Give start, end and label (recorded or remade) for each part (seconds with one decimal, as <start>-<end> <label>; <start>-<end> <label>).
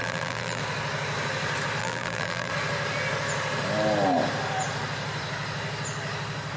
0.0-0.6 remade; 0.6-1.8 recorded; 1.8-2.5 remade; 2.5-6.6 recorded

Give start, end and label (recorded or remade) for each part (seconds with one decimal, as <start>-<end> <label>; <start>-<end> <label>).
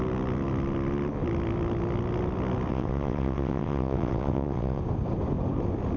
0.0-2.7 recorded; 2.7-4.8 remade; 4.8-6.0 recorded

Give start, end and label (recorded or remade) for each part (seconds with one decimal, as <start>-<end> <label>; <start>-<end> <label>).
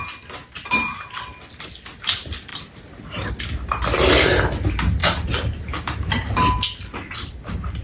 0.0-0.4 recorded; 0.4-1.1 remade; 1.1-2.5 recorded; 2.5-3.3 remade; 3.3-5.0 recorded; 5.0-6.3 remade; 6.3-7.8 recorded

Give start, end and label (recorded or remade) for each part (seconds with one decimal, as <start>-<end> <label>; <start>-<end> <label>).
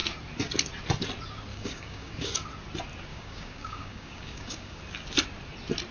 0.0-1.5 recorded; 1.5-2.3 remade; 2.3-3.1 recorded; 3.1-4.8 remade; 4.8-5.9 recorded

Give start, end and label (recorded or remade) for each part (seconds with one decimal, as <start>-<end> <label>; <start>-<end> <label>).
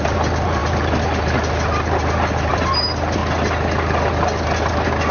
0.0-3.2 remade; 3.2-5.1 recorded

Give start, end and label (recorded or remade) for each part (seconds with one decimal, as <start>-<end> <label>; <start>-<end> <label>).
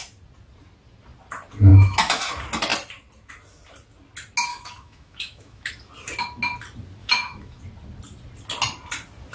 0.0-1.7 recorded; 1.7-2.2 remade; 2.2-4.5 recorded; 4.5-5.7 remade; 5.7-7.0 recorded; 7.0-7.6 remade; 7.6-9.3 recorded